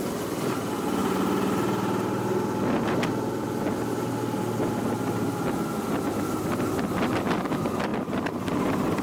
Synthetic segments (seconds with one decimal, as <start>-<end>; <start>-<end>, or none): none